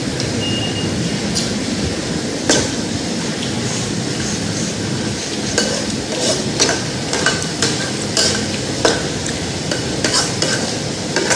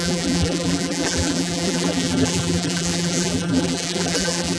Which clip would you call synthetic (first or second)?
second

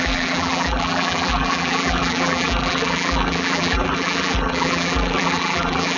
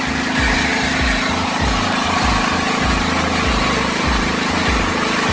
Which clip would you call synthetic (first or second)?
first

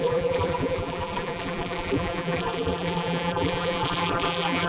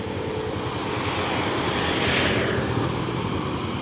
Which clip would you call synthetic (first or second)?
first